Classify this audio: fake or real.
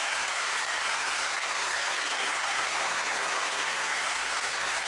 fake